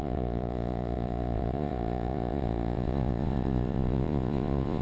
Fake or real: fake